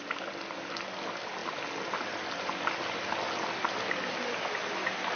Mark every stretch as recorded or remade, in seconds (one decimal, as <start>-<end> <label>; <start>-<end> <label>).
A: 0.0-5.2 recorded